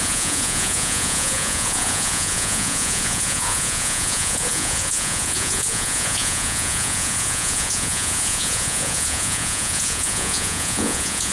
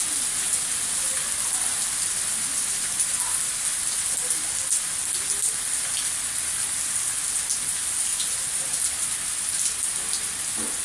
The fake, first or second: first